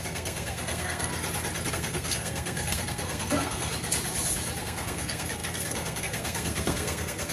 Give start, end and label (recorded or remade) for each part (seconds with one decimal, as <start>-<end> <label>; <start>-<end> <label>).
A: 0.0-1.1 remade; 1.1-1.7 recorded; 1.7-3.7 remade; 3.7-4.6 recorded; 4.6-7.3 remade